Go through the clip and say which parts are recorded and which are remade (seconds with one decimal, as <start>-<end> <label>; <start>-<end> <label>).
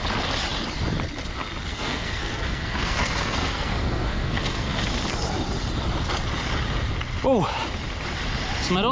0.0-1.7 recorded; 1.7-4.8 remade; 4.8-8.9 recorded